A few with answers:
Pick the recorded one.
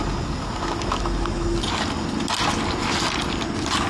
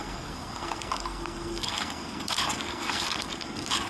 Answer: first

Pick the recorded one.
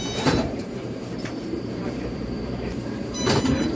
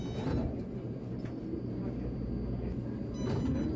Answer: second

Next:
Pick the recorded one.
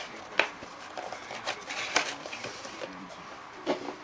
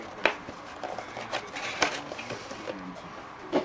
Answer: second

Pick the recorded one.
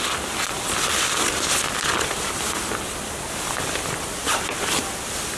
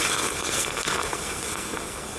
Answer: first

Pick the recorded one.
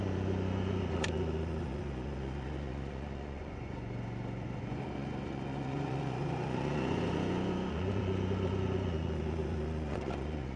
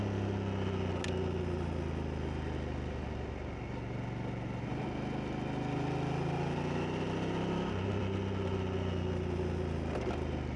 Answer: second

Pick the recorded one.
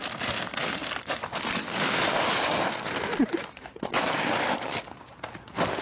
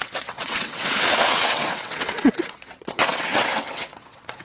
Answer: first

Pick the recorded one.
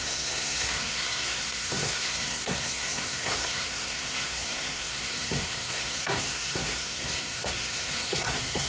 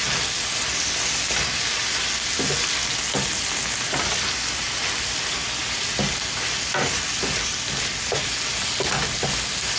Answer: second